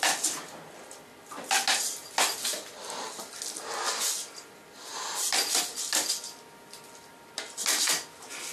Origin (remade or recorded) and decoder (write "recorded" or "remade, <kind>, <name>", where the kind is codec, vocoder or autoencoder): recorded